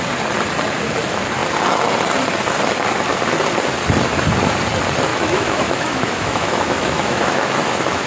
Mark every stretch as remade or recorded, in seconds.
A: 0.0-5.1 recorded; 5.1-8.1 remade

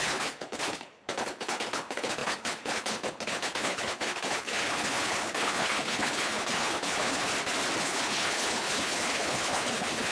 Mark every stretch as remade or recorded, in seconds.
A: 0.0-7.3 remade; 7.3-7.8 recorded; 7.8-10.1 remade